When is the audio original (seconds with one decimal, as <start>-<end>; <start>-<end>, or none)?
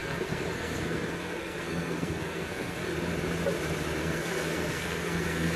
2.9-4.0